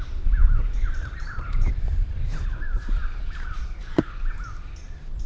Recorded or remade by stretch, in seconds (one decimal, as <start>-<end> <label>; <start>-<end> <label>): 0.0-0.4 recorded; 0.4-3.6 remade; 3.6-5.3 recorded